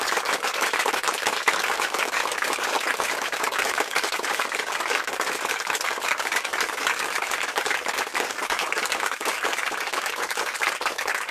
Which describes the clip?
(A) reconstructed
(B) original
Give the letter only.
A